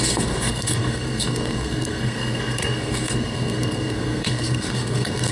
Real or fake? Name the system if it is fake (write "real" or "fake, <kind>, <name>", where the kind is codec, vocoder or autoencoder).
fake, codec, SNAC